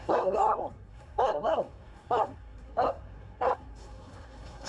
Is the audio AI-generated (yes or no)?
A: yes